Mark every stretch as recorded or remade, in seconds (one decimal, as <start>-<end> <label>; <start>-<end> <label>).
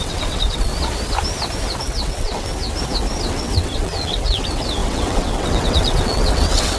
0.0-0.7 remade; 0.7-1.8 recorded; 1.8-2.5 remade; 2.5-3.2 recorded; 3.2-6.8 remade